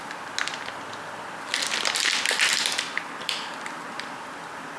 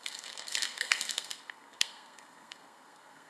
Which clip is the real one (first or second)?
first